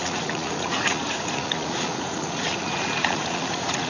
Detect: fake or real fake